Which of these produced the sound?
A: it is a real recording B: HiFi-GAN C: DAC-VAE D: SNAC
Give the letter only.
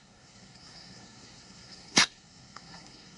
D